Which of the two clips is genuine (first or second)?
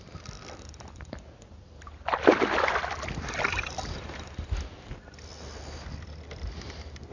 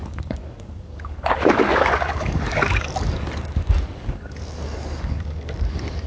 first